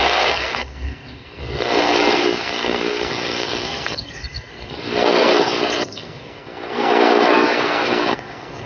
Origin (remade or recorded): remade